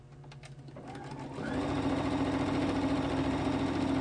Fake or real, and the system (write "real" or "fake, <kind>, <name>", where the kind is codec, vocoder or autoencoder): real